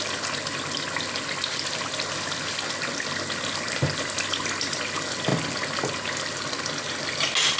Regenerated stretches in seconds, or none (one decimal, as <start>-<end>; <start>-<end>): none